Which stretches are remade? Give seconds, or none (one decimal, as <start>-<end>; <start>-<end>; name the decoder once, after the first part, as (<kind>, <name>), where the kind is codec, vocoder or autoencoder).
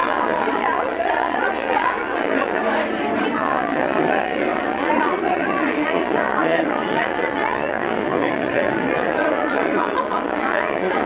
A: 0.0-2.6 (vocoder, Vocos); 3.2-11.1